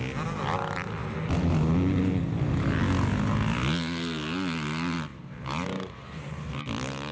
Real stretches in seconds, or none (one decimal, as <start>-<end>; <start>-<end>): 0.0-5.1; 6.5-7.1